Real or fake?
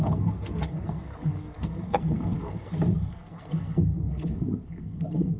fake